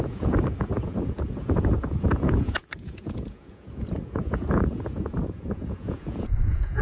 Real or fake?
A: fake